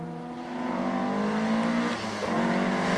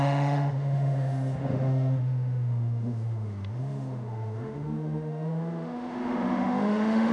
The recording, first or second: first